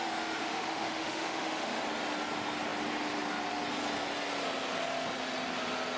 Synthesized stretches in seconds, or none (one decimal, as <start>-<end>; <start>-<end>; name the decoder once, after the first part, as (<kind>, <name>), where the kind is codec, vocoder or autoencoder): 0.4-1.8 (autoencoder, DAC-VAE)